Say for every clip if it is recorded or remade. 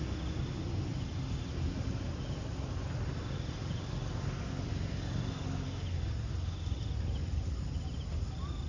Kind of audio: recorded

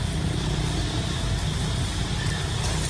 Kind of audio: recorded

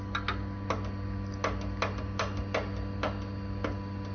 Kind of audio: recorded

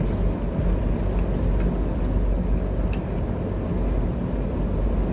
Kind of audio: recorded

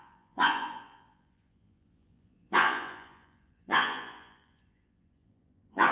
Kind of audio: remade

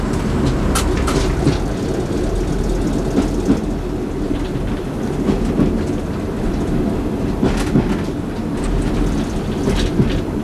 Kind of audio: recorded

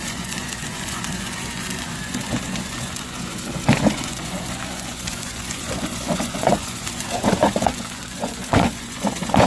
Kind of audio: remade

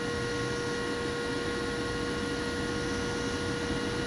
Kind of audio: recorded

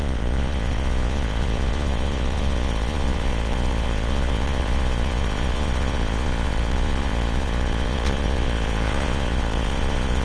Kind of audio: remade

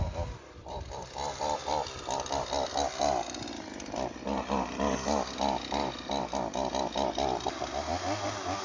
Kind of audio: recorded